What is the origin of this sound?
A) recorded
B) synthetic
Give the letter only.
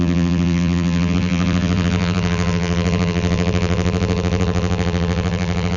B